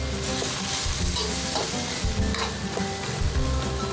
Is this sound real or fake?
real